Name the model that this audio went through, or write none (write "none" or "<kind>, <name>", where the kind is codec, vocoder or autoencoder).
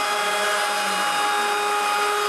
none